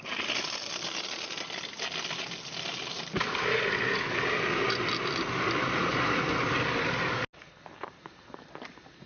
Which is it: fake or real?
real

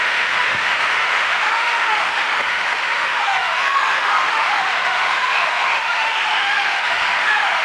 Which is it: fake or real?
fake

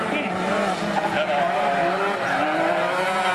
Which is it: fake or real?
real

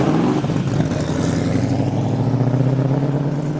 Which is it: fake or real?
real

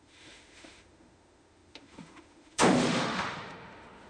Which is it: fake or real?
fake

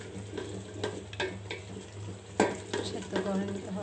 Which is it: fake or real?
real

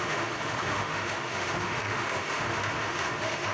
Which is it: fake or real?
fake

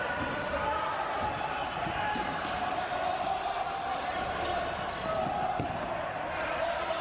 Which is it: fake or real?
real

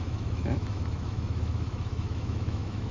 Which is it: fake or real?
fake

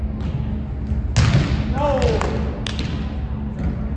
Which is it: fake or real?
real